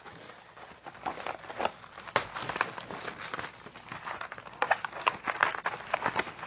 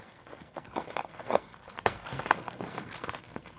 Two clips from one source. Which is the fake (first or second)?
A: second